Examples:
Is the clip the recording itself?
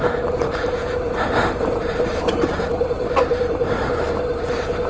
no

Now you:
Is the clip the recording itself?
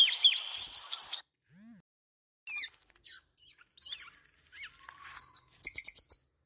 yes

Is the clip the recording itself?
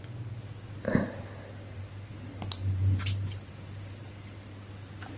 yes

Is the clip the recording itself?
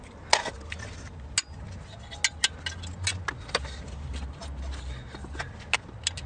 yes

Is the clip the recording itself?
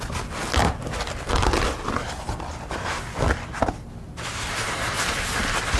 yes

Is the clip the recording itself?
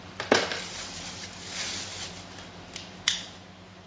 no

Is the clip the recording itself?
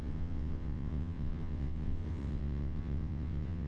no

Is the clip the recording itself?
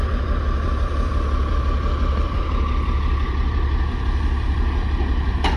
no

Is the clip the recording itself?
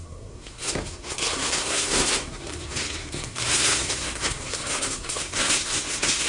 no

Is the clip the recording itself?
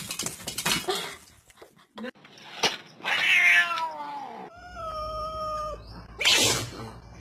yes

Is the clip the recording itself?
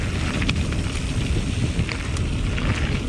yes